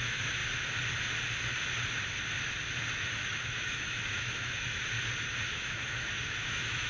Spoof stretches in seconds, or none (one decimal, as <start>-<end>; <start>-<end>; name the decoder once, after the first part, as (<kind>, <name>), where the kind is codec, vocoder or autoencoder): 0.0-0.4 (autoencoder, DAC-VAE); 2.9-4.8; 5.5-6.9